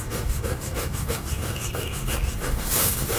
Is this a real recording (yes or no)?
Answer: no